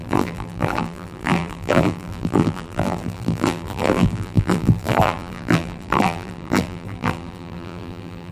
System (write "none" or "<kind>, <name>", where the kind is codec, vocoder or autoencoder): vocoder, BigVGAN v2